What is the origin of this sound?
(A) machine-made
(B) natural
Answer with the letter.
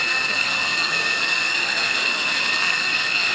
A